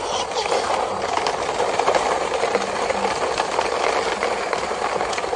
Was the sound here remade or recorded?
recorded